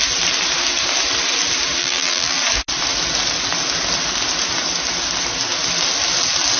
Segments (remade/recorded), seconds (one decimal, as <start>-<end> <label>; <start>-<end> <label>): 0.0-1.8 recorded; 1.8-2.4 remade; 2.4-6.6 recorded